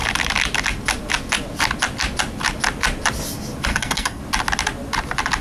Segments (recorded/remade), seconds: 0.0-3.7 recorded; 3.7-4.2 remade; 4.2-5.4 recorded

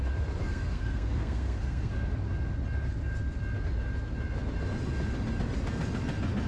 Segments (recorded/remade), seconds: 0.0-0.4 recorded; 0.4-1.9 remade; 1.9-6.5 recorded

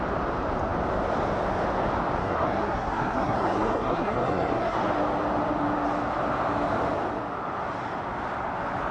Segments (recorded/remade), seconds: 0.0-2.2 recorded; 2.2-4.8 remade; 4.8-8.9 recorded